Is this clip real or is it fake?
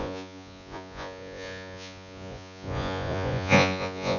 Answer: fake